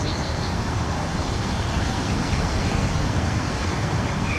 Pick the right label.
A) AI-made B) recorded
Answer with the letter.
A